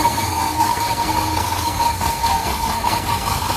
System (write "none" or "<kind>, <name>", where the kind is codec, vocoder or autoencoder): codec, SNAC